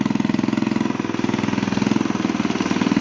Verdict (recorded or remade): recorded